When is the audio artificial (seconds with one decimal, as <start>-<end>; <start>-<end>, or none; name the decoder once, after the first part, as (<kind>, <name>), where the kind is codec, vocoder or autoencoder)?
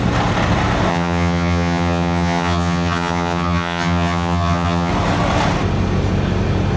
0.9-4.9 (vocoder, HiFi-GAN)